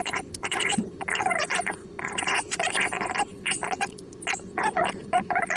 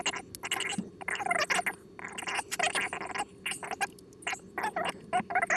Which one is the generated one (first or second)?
first